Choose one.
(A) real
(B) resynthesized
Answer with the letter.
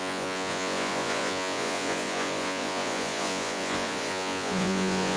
B